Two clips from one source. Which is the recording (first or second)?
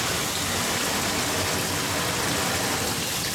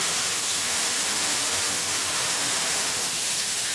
first